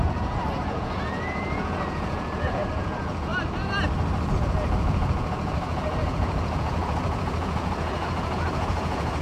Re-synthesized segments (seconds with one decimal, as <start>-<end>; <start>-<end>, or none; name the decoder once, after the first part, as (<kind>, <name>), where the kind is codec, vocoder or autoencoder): 0.0-3.3 (vocoder, Vocos); 4.3-9.2